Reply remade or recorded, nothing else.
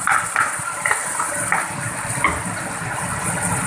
recorded